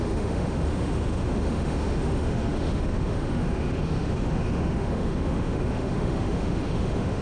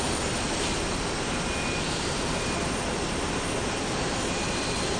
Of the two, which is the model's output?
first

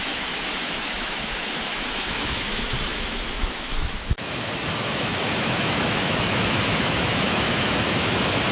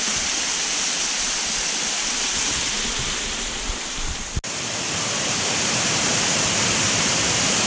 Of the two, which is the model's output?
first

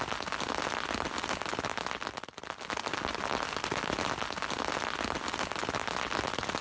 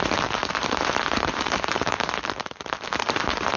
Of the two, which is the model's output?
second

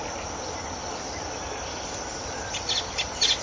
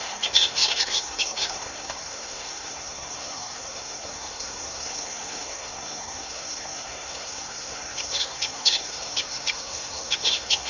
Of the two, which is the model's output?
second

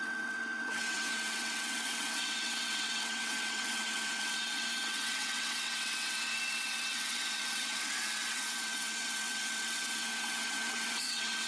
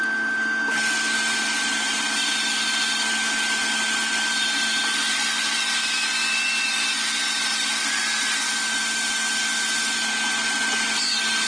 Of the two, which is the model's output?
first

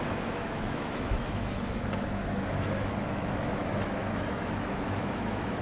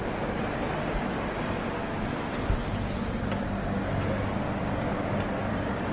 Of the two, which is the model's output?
first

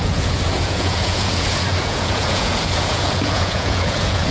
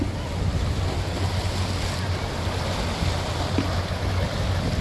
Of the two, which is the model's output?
first